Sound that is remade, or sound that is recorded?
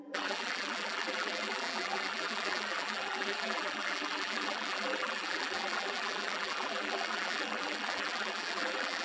remade